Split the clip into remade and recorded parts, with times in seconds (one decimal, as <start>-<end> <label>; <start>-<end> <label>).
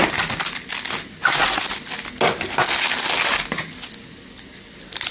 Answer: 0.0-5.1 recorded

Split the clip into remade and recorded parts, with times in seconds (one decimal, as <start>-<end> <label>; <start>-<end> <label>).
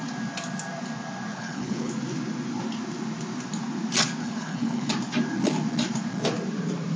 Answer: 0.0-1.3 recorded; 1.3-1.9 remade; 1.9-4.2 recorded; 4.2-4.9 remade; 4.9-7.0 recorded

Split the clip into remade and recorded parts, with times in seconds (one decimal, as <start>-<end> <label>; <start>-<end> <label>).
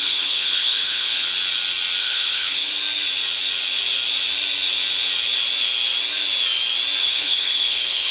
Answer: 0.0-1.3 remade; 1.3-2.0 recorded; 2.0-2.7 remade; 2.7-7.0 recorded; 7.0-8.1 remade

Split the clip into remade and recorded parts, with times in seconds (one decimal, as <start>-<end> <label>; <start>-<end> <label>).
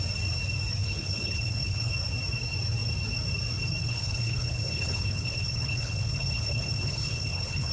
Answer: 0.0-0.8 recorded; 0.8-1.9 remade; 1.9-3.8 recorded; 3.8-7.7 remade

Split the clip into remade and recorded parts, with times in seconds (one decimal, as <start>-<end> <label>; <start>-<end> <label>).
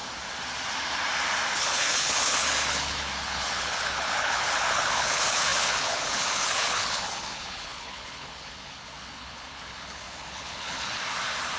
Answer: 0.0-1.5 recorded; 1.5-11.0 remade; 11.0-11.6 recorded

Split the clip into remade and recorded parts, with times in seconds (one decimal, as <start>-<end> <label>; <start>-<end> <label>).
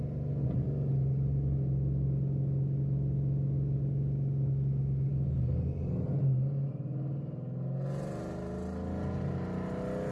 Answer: 0.0-10.1 recorded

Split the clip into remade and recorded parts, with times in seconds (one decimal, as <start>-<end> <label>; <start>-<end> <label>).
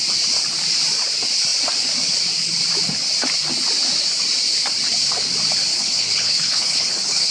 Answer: 0.0-5.7 recorded; 5.7-7.3 remade